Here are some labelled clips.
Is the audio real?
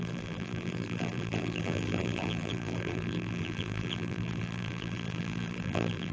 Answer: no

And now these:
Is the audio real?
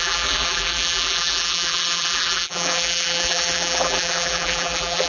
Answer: no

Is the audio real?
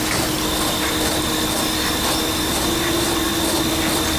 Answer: yes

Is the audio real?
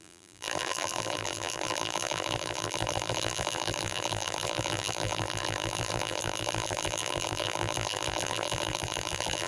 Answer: no